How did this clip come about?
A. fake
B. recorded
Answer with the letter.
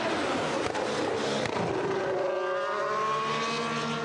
B